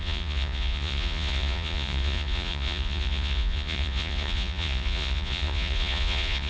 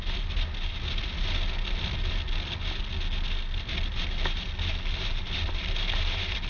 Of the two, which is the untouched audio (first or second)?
second